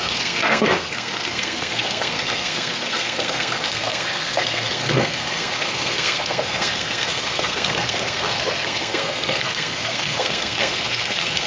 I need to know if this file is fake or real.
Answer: fake